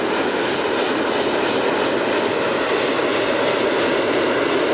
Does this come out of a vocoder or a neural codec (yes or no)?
no